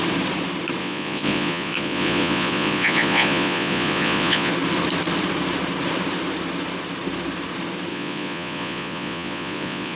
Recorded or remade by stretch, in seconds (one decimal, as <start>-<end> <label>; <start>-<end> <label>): 0.0-0.8 recorded; 0.8-4.5 remade; 4.5-7.9 recorded; 7.9-10.0 remade